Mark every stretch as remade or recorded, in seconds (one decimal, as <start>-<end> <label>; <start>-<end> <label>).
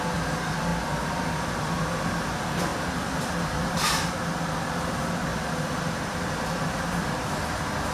0.0-2.7 recorded; 2.7-4.1 remade; 4.1-5.3 recorded; 5.3-7.3 remade; 7.3-7.9 recorded